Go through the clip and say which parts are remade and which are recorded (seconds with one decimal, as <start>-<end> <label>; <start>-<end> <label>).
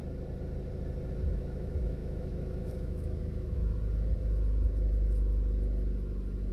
0.0-1.3 recorded; 1.3-3.6 remade; 3.6-6.5 recorded